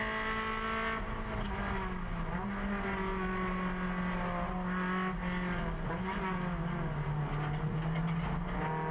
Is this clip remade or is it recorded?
recorded